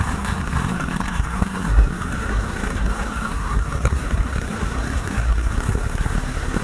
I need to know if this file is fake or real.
fake